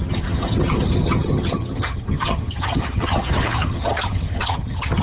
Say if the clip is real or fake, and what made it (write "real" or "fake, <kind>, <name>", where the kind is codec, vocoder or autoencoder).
fake, vocoder, HiFi-GAN